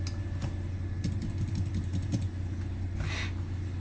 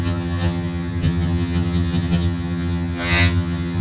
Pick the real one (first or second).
first